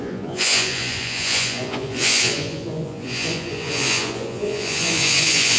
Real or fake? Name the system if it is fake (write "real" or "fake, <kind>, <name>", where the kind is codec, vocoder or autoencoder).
fake, vocoder, Vocos